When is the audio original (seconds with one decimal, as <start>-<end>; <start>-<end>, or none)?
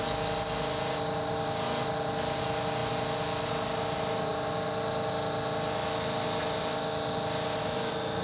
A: 0.0-8.2